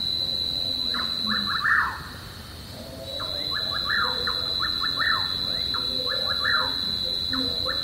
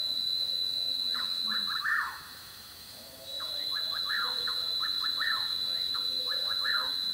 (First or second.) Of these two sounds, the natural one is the first